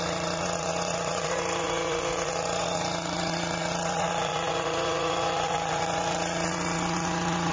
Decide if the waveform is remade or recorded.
remade